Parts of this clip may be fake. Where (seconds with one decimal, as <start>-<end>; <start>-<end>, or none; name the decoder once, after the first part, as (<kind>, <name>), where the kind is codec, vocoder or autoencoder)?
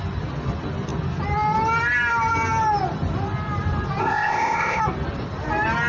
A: 4.0-4.8 (codec, ZipCodec)